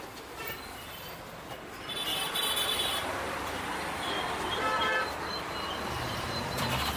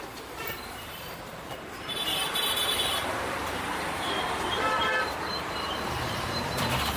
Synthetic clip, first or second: second